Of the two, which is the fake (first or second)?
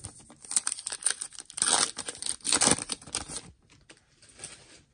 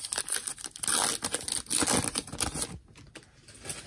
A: first